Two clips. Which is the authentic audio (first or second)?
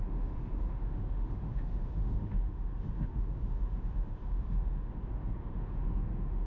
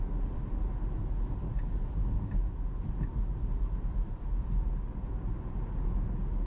second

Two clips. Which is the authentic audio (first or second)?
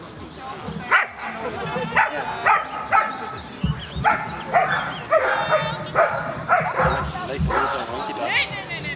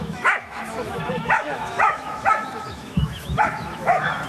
first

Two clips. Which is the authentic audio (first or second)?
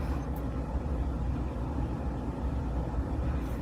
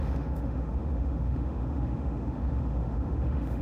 first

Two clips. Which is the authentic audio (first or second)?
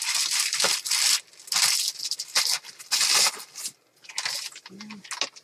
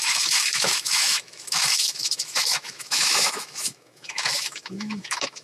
first